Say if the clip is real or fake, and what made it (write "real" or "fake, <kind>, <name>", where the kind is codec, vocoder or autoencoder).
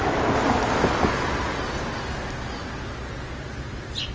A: real